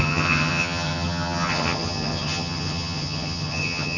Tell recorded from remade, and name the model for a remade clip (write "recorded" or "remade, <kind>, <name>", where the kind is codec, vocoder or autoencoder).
remade, vocoder, HiFi-GAN